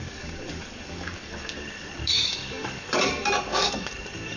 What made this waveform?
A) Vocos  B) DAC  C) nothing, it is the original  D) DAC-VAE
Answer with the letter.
B